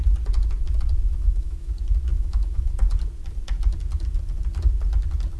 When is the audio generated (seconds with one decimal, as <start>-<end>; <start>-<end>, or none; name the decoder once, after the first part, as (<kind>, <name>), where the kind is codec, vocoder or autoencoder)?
1.1-1.7 (autoencoder, DAC-VAE); 2.1-2.7